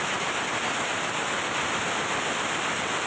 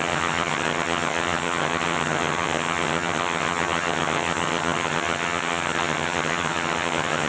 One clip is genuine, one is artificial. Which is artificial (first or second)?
second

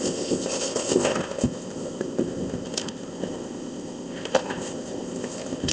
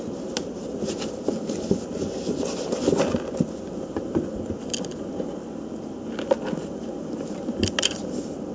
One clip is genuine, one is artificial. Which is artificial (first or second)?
first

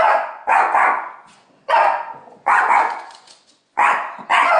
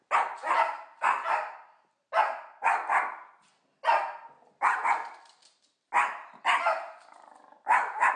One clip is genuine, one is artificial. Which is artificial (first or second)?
first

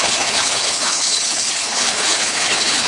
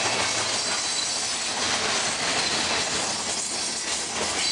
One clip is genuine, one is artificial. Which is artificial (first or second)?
first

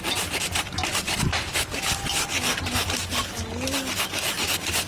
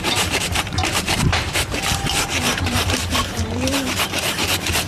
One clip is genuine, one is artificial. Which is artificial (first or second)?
second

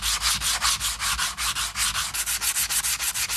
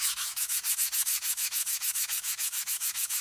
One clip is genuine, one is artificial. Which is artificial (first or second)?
second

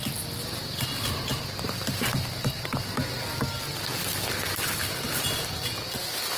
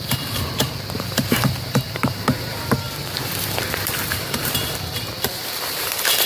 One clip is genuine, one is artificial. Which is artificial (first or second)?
second